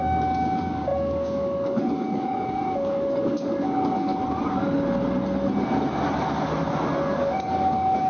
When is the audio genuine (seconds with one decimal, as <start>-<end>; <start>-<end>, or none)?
4.1-7.1